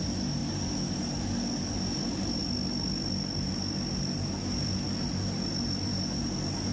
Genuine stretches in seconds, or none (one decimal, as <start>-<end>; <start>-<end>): 0.0-6.7